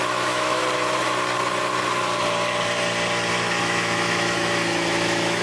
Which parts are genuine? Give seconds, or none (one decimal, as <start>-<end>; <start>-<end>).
0.6-3.6